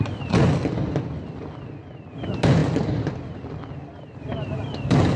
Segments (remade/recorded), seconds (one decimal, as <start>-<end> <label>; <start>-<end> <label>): 0.0-5.2 recorded